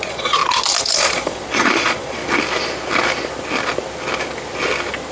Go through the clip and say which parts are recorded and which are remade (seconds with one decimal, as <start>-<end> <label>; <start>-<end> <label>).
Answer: 0.0-0.4 remade; 0.4-1.0 recorded; 1.0-2.2 remade; 2.2-5.1 recorded